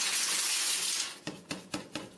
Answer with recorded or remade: remade